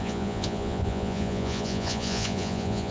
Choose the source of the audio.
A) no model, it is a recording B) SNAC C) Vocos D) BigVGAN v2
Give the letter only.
C